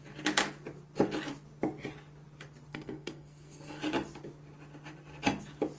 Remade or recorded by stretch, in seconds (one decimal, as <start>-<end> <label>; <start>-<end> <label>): 0.0-2.7 recorded; 2.7-3.8 remade; 3.8-5.8 recorded